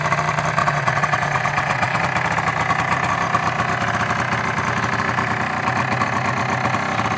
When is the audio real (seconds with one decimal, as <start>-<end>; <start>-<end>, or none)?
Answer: 0.0-0.6; 2.0-7.2